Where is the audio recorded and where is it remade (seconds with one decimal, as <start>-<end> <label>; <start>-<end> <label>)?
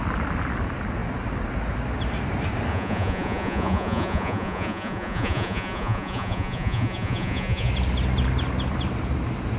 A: 0.0-2.7 recorded; 2.7-7.7 remade; 7.7-9.6 recorded